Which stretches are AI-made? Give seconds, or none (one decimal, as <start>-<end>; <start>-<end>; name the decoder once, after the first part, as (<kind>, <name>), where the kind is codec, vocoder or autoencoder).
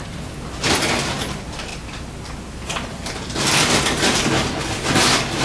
none